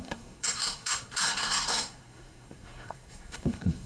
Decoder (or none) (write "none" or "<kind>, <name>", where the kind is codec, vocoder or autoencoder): codec, SNAC